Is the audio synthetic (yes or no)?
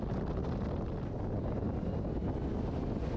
no